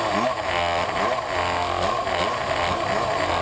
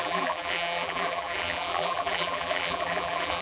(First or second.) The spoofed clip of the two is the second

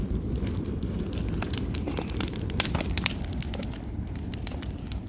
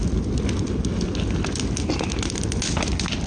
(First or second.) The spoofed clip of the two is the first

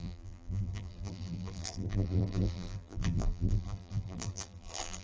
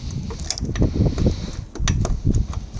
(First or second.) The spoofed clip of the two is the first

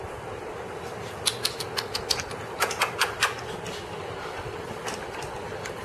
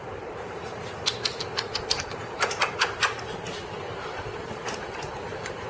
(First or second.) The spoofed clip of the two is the second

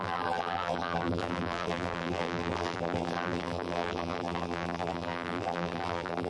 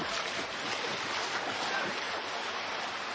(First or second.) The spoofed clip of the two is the first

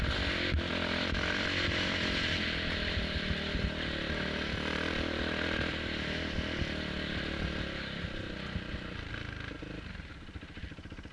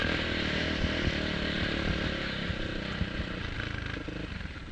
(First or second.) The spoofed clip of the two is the second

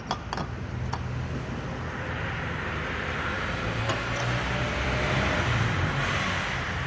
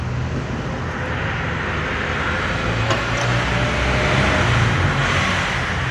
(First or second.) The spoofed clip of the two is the first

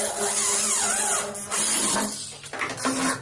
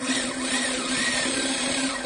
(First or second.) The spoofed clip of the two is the second